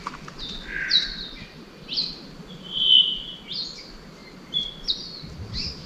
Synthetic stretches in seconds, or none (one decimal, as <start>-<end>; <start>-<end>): none